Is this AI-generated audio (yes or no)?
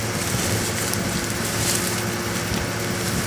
no